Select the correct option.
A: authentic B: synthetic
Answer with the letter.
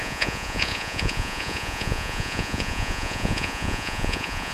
B